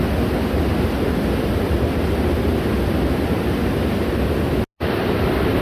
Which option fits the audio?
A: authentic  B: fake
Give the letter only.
A